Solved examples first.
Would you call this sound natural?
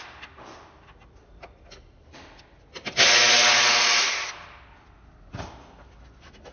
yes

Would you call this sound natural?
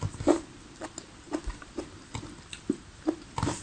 yes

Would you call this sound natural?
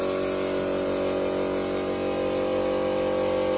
yes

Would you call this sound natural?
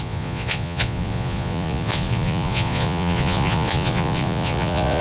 no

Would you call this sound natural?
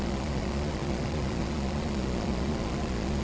no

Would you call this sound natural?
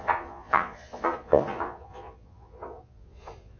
no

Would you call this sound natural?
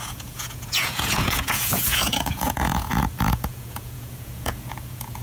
no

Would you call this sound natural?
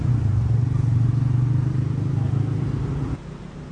yes